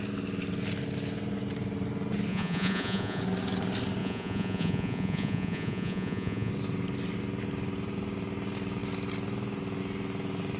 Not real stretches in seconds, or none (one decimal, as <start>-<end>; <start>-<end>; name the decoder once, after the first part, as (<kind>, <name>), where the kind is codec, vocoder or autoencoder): 2.3-3.2 (vocoder, Vocos); 4.0-6.5